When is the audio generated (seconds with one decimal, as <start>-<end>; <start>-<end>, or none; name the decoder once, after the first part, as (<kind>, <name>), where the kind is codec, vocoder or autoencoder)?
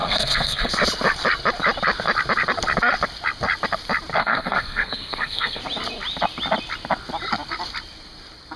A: 0.0-0.7 (codec, SNAC); 4.2-5.6